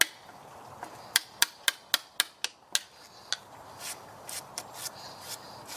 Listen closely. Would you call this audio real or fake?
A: real